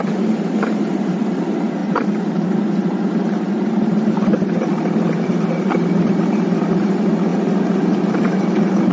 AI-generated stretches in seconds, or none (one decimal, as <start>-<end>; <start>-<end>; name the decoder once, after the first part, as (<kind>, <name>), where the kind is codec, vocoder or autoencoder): 0.0-8.9 (vocoder, BigVGAN v2)

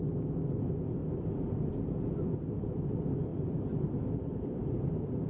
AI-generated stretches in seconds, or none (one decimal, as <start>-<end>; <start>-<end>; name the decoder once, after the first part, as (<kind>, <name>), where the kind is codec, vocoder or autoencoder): 1.0-2.8 (vocoder, BigVGAN v2); 3.3-5.3

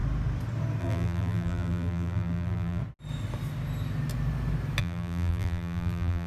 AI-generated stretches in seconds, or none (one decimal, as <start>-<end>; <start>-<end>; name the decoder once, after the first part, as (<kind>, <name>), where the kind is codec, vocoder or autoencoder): 0.8-2.8 (vocoder, BigVGAN v2); 4.8-6.3